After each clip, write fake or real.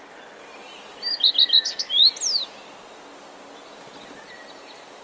real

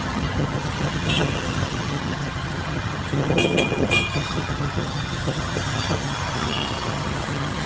fake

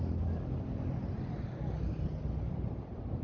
real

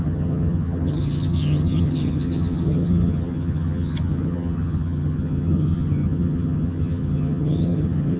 fake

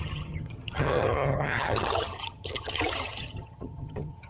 fake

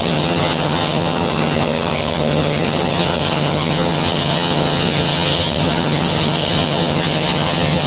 fake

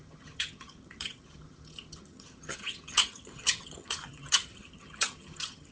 fake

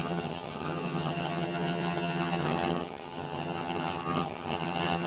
fake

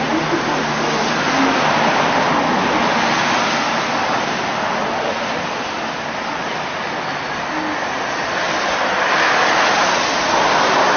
real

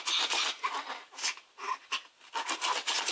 real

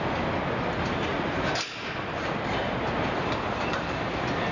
real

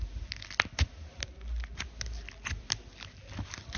real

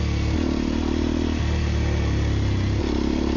real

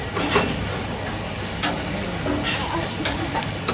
real